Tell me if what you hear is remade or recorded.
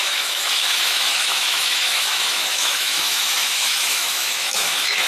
remade